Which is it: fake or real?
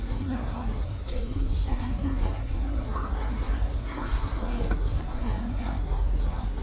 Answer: fake